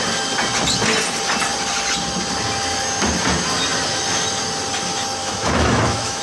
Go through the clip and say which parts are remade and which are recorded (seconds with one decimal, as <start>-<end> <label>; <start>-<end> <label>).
0.0-5.2 recorded; 5.2-6.2 remade

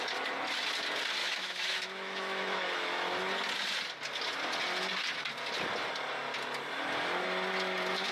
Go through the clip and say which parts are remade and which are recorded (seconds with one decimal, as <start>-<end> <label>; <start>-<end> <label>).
0.0-1.2 recorded; 1.2-3.2 remade; 3.2-8.1 recorded

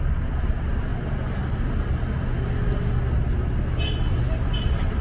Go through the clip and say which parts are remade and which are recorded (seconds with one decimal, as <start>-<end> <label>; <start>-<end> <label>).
0.0-5.0 recorded

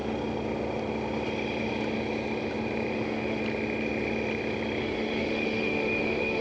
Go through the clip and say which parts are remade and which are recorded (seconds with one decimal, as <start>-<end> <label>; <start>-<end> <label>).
0.0-2.9 recorded; 2.9-3.4 remade; 3.4-4.8 recorded; 4.8-6.4 remade

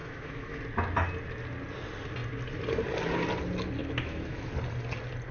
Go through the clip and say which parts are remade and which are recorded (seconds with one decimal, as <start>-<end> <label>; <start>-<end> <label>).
0.0-0.6 remade; 0.6-3.8 recorded; 3.8-4.5 remade; 4.5-5.3 recorded

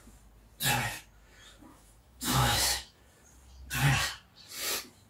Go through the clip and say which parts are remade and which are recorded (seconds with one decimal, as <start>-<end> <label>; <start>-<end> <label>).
0.0-1.7 recorded; 1.7-3.0 remade; 3.0-5.1 recorded

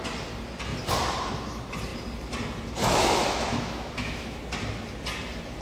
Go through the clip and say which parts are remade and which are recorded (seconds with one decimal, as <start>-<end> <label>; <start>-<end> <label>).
0.0-2.8 recorded; 2.8-4.4 remade; 4.4-5.6 recorded

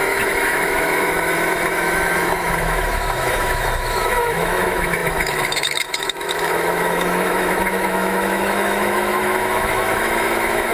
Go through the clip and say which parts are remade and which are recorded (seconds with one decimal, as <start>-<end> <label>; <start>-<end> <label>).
0.0-10.7 remade